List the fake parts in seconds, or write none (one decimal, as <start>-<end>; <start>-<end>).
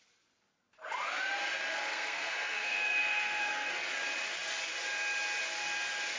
1.7-3.7